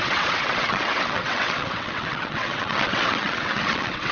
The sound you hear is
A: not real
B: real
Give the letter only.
A